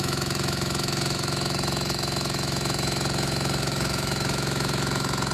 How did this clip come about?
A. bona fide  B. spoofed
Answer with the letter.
B